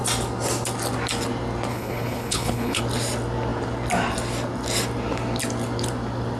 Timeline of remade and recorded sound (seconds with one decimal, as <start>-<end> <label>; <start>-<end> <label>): 0.0-1.7 recorded; 1.7-2.8 remade; 2.8-6.4 recorded